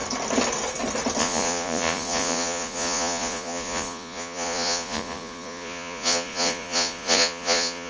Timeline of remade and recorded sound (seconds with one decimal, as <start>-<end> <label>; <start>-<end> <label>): 0.0-1.2 recorded; 1.2-7.9 remade